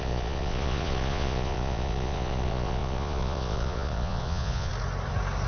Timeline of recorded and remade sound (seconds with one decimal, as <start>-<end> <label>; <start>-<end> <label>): 0.0-4.7 remade; 4.7-5.5 recorded